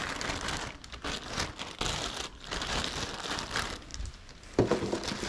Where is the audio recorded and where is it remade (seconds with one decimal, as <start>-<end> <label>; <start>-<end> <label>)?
0.0-5.3 recorded